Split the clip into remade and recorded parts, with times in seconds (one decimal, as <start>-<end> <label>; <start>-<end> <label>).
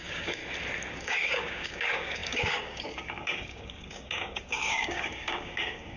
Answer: 0.0-0.4 remade; 0.4-0.9 recorded; 0.9-6.0 remade